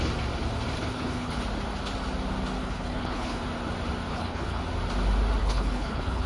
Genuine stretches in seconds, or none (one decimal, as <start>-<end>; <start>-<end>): 0.0-0.8; 1.4-2.6; 3.4-4.1; 4.6-5.4